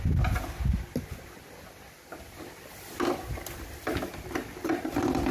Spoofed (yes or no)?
no